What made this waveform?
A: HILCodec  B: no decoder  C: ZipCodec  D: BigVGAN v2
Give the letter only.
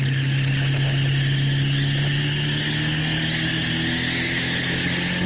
B